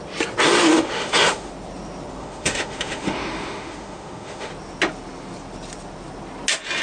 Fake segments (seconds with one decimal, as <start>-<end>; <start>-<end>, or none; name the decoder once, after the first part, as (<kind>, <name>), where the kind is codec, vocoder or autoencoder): 0.6-1.5 (autoencoder, DAC-VAE); 2.2-4.5